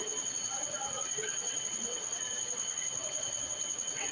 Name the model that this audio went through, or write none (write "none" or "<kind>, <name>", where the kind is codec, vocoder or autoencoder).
vocoder, WaveNeXt